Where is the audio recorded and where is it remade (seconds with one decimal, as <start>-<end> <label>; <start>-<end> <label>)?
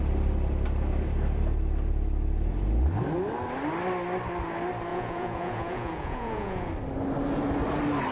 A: 0.0-4.9 recorded; 4.9-6.7 remade; 6.7-8.1 recorded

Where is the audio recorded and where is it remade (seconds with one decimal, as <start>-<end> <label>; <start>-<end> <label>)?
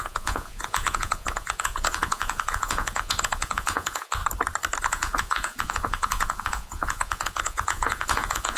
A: 0.0-4.2 remade; 4.2-4.8 recorded; 4.8-8.6 remade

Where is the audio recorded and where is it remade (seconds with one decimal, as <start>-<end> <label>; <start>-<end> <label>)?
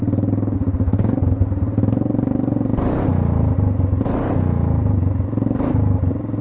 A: 0.0-6.4 recorded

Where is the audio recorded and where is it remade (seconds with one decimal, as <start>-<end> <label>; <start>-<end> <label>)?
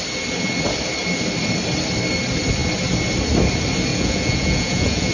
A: 0.0-3.9 recorded; 3.9-5.1 remade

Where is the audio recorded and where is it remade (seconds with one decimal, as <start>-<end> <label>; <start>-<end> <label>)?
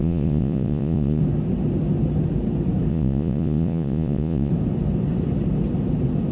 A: 0.0-1.2 remade; 1.2-2.9 recorded; 2.9-4.5 remade; 4.5-6.3 recorded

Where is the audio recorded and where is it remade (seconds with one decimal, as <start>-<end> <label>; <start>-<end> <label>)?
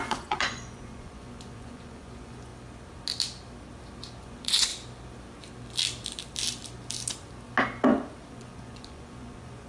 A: 0.0-2.5 remade; 2.5-4.2 recorded; 4.2-4.7 remade; 4.7-8.3 recorded; 8.3-9.7 remade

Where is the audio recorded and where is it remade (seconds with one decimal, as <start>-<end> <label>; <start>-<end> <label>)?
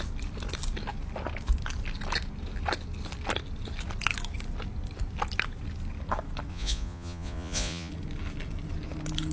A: 0.0-6.5 recorded; 6.5-7.9 remade; 7.9-9.3 recorded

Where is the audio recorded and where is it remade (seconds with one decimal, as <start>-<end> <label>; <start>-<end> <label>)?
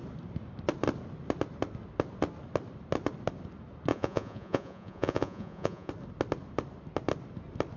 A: 0.0-3.9 recorded; 3.9-5.9 remade; 5.9-7.8 recorded